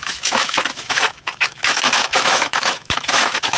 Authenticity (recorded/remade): remade